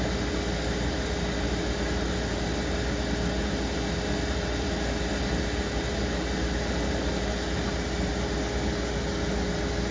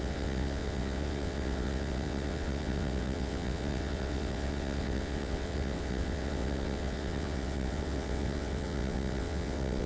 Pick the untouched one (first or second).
first